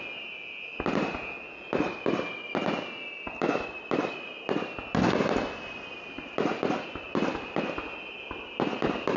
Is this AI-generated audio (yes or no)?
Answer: no